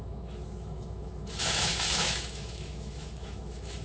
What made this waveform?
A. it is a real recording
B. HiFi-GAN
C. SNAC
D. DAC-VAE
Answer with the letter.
D